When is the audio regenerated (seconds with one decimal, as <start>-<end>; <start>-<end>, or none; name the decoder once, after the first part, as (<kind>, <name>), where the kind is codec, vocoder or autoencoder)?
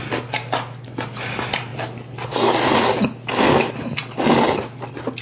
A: none